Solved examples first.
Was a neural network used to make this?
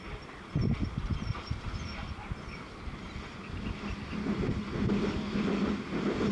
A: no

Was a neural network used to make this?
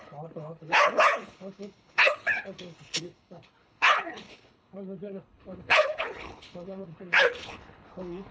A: yes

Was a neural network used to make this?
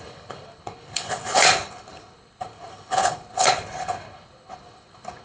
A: yes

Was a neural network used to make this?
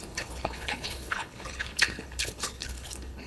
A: yes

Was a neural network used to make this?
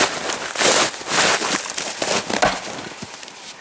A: no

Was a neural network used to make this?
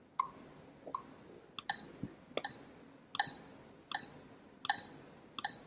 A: no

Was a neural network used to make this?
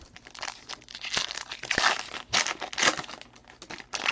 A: no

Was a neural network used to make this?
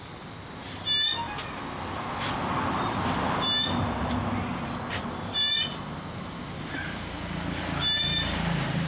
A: no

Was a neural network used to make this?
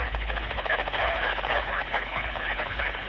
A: yes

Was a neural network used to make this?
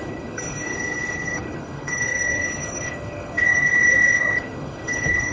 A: yes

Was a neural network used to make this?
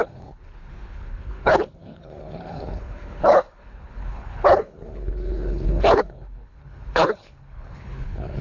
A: yes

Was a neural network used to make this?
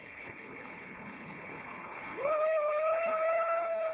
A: yes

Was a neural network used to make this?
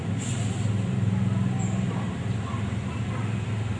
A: no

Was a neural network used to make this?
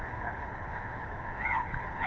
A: yes